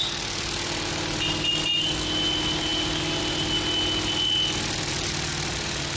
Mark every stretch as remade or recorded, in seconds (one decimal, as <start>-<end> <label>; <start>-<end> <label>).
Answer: 0.0-6.0 recorded